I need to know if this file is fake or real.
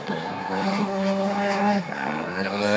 fake